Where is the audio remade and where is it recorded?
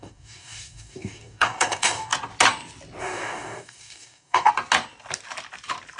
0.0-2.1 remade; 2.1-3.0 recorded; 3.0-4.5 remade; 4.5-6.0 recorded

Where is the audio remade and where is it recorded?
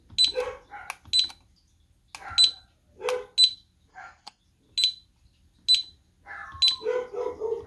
0.0-3.9 recorded; 3.9-4.4 remade; 4.4-7.7 recorded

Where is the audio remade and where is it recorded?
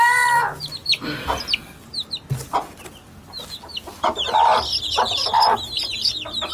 0.0-6.5 recorded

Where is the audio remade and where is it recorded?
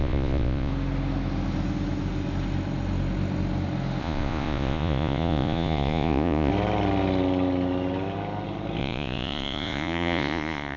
0.0-0.7 remade; 0.7-4.0 recorded; 4.0-6.5 remade; 6.5-8.8 recorded; 8.8-10.8 remade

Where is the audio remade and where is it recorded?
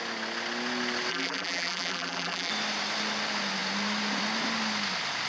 0.0-1.1 recorded; 1.1-2.5 remade; 2.5-5.3 recorded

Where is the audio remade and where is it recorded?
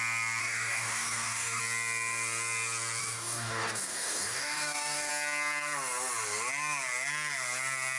0.0-0.4 recorded; 0.4-1.6 remade; 1.6-3.0 recorded; 3.0-5.1 remade; 5.1-8.0 recorded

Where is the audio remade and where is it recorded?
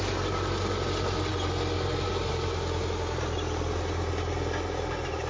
0.0-5.3 recorded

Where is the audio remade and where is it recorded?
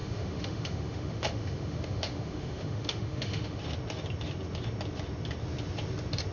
0.0-3.6 remade; 3.6-6.3 recorded